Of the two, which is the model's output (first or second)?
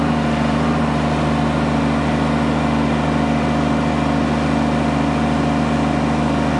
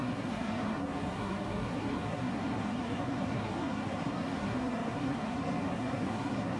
second